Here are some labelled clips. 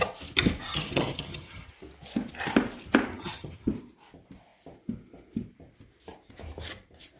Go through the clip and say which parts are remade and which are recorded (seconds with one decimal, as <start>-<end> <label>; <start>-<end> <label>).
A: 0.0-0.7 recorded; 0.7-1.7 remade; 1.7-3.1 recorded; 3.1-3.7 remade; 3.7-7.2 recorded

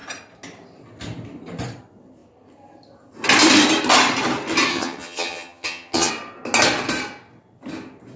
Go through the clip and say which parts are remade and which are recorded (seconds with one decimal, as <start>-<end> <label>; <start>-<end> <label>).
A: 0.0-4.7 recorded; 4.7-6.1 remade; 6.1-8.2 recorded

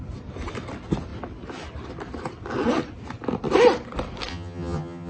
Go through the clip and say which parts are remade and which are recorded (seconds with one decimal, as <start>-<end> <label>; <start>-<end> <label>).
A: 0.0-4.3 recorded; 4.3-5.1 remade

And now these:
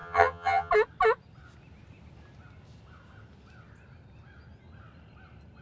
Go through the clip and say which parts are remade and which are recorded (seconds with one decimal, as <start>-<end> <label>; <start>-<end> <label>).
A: 0.0-0.7 remade; 0.7-5.6 recorded

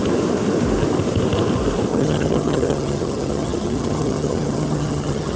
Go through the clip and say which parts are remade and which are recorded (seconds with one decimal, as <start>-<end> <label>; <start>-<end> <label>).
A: 0.0-1.9 recorded; 1.9-5.4 remade

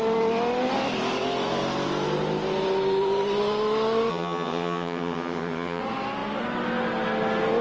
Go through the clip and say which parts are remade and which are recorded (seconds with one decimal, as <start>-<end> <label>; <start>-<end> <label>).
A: 0.0-4.1 recorded; 4.1-5.8 remade; 5.8-7.6 recorded

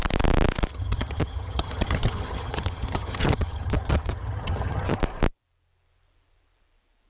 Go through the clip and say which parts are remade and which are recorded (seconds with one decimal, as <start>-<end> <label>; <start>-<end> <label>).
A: 0.0-0.7 recorded; 0.7-5.0 remade; 5.0-7.1 recorded